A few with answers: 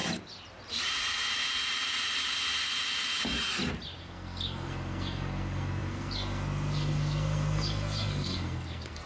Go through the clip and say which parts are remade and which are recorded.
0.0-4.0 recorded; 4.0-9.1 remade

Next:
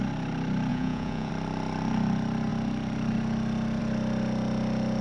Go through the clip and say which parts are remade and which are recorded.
0.0-0.7 recorded; 0.7-1.3 remade; 1.3-5.0 recorded

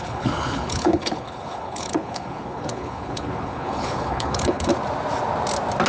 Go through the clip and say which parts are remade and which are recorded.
0.0-4.7 remade; 4.7-5.9 recorded